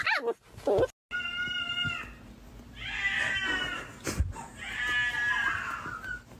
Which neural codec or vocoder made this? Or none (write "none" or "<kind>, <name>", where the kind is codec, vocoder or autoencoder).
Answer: none